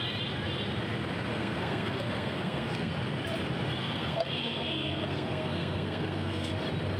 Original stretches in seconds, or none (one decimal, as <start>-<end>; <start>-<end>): 0.0-1.3; 2.9-3.8; 6.5-7.0